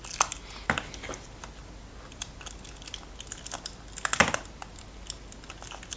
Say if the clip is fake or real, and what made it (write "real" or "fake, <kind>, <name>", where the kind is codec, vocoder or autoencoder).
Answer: real